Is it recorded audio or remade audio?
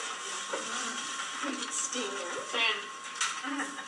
recorded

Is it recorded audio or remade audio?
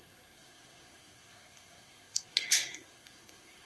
remade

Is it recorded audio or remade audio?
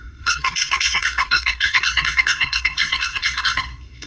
remade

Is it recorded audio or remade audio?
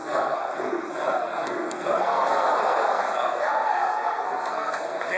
remade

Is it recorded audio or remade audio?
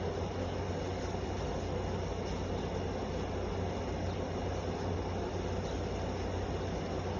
recorded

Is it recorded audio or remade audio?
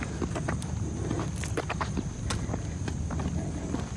recorded